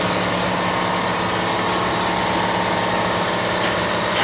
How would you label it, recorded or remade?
recorded